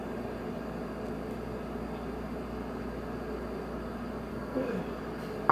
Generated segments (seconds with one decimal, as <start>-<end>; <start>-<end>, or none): 4.3-4.8